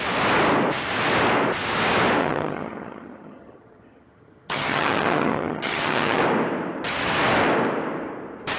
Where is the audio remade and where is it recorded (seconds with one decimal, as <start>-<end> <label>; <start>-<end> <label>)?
0.0-2.2 recorded; 2.2-6.2 remade; 6.2-8.6 recorded